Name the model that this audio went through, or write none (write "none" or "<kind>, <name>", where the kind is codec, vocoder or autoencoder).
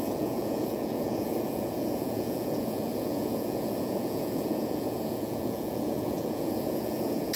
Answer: vocoder, Vocos